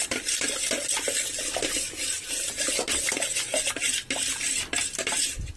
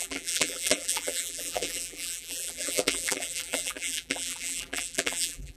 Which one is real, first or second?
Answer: first